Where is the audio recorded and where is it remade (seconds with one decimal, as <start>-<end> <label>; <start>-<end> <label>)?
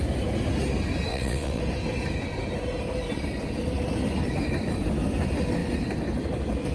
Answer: 0.0-1.1 recorded; 1.1-1.6 remade; 1.6-6.7 recorded